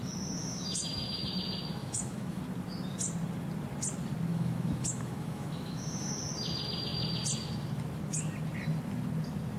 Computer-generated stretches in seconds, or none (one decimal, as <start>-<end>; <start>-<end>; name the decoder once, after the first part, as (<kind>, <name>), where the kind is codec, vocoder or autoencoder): 0.4-1.3 (autoencoder, DAC-VAE); 1.8-2.4; 4.3-6.1